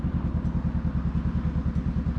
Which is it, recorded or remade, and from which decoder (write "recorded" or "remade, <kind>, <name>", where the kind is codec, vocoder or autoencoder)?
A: recorded